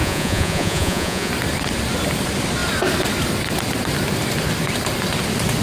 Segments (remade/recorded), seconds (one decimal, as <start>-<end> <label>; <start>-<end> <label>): 0.0-1.3 remade; 1.3-5.6 recorded